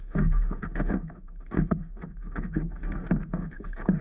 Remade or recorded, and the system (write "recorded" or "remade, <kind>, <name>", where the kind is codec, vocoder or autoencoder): remade, autoencoder, DAC-VAE